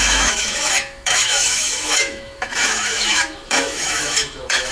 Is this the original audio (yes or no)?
no